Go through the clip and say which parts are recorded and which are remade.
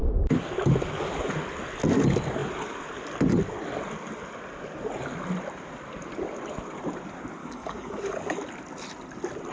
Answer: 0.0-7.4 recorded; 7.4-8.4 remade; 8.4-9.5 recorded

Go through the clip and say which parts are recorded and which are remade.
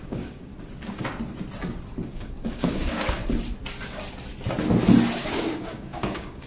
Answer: 0.0-0.5 remade; 0.5-2.1 recorded; 2.1-3.2 remade; 3.2-5.1 recorded; 5.1-6.5 remade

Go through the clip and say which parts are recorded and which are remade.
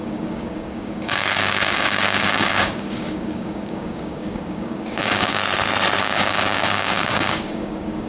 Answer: 0.0-5.4 remade; 5.4-6.0 recorded; 6.0-8.1 remade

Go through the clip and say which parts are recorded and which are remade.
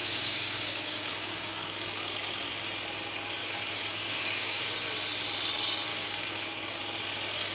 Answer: 0.0-2.4 remade; 2.4-3.4 recorded; 3.4-4.6 remade; 4.6-5.9 recorded; 5.9-6.8 remade; 6.8-7.5 recorded